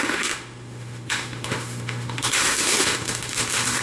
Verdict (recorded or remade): remade